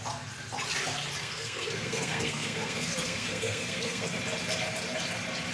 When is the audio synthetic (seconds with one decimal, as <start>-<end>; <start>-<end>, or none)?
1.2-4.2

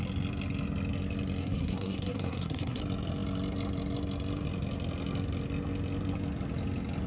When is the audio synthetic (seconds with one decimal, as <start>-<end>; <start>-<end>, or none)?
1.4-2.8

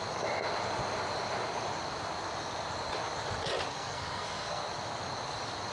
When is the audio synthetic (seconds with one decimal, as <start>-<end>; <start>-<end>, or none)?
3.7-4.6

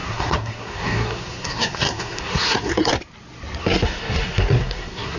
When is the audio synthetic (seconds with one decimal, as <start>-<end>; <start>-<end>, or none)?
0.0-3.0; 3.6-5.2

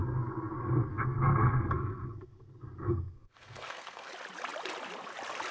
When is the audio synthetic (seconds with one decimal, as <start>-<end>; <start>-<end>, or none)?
0.0-0.5; 0.9-4.1

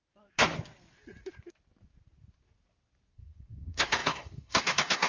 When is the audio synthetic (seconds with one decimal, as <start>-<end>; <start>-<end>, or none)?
3.1-5.1

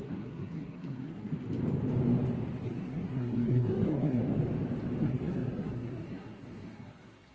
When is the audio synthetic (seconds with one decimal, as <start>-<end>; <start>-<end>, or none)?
0.0-1.3; 2.6-4.2; 5.0-7.3

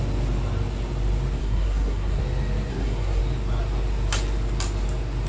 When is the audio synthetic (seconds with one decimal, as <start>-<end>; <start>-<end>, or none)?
1.4-2.2; 2.7-3.2